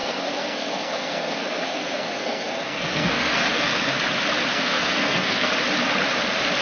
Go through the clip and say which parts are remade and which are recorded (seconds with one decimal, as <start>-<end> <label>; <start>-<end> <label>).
0.0-4.0 remade; 4.0-4.5 recorded; 4.5-5.5 remade; 5.5-6.6 recorded